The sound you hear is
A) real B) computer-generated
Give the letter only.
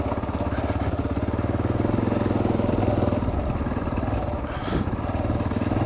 A